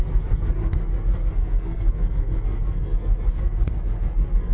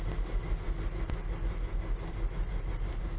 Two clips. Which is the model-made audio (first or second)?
first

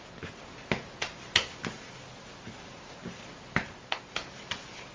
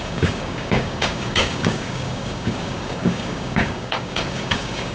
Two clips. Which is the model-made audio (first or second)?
second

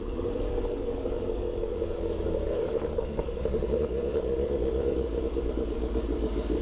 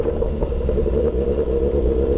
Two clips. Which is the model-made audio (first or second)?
first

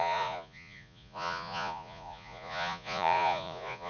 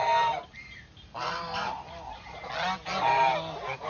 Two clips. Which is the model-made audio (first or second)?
first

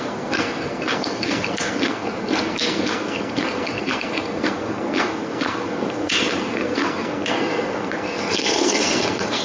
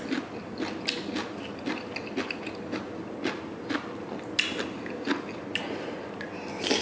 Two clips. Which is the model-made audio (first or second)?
first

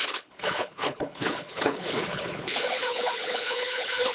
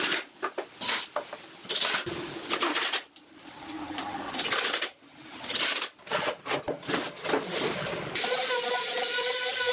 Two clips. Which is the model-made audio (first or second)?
first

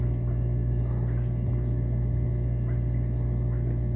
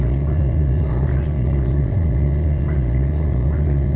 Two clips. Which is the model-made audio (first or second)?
second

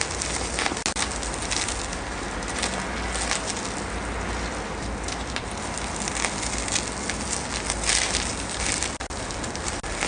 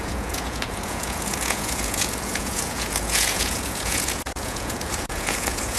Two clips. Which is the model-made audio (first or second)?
second